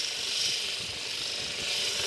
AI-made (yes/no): no